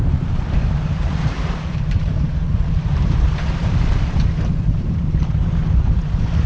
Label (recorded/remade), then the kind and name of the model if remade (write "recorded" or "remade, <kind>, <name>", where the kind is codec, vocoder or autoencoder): remade, vocoder, BigVGAN v2